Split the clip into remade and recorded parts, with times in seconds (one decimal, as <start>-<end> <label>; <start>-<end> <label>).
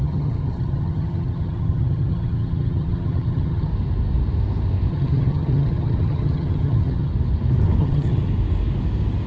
0.0-3.7 remade; 3.7-4.9 recorded; 4.9-7.1 remade; 7.1-7.8 recorded; 7.8-8.3 remade; 8.3-9.3 recorded